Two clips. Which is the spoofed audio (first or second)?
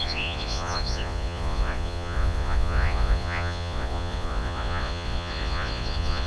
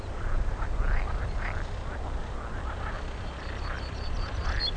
first